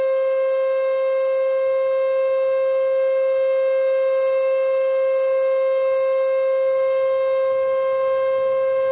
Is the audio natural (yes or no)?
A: yes